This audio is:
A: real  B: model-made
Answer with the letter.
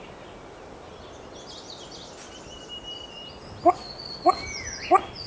A